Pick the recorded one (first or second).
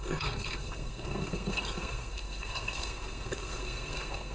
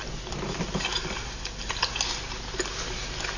second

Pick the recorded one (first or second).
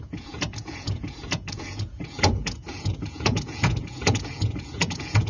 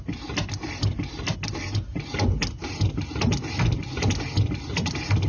second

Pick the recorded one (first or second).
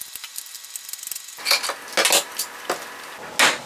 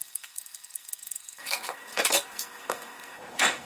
first